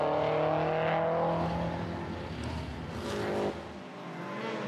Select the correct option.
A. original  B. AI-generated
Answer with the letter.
A